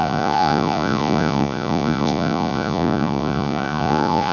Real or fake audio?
fake